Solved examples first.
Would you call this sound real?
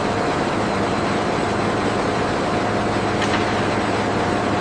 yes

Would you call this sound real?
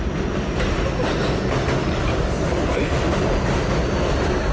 yes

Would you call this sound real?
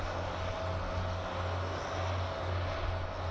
yes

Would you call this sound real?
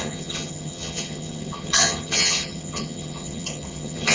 no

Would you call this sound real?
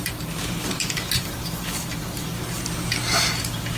no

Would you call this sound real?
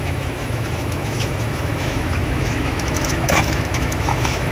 no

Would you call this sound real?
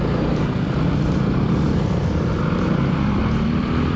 no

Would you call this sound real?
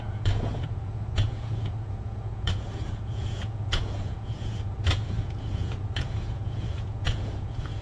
no